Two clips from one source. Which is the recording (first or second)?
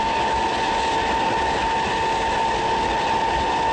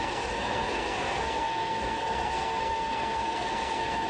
first